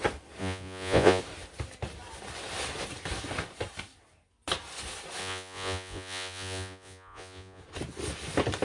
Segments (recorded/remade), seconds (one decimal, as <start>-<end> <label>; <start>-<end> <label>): 0.0-0.4 recorded; 0.4-1.2 remade; 1.2-5.2 recorded; 5.2-7.6 remade; 7.6-8.6 recorded